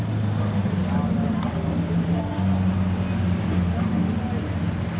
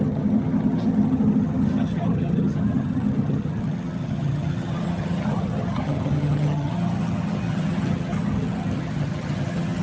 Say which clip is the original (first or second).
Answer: first